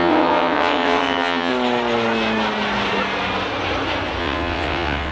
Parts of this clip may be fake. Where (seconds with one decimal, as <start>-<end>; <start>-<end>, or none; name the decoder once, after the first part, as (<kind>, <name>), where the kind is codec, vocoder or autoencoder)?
0.0-1.5 (vocoder, WaveNeXt); 4.2-5.1